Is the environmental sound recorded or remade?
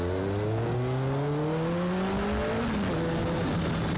recorded